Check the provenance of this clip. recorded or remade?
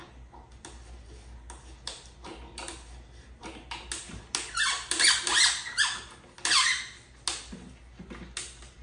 recorded